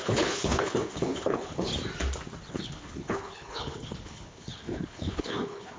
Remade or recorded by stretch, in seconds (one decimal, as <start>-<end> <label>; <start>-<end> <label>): 0.0-1.7 remade; 1.7-2.5 recorded; 2.5-5.8 remade

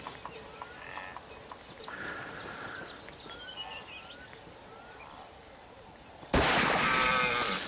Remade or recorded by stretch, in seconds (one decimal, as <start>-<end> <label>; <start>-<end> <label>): 0.0-7.7 recorded

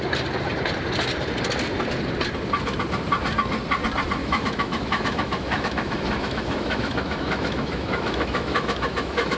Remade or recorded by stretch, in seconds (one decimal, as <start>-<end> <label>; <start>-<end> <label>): 0.0-4.2 recorded; 4.2-9.4 remade

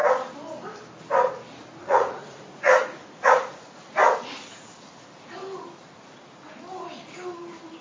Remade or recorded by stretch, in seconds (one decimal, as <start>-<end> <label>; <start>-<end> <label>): 0.0-1.8 recorded; 1.8-3.9 remade; 3.9-7.8 recorded

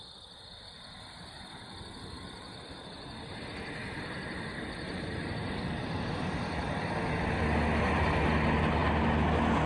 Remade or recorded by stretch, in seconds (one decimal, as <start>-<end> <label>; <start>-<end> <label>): 0.0-5.4 recorded; 5.4-6.2 remade; 6.2-9.7 recorded